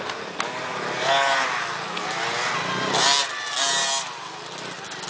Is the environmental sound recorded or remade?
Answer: recorded